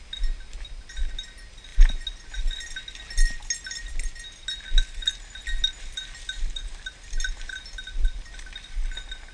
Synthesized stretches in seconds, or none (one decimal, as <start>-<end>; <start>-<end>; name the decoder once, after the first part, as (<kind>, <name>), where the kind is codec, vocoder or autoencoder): none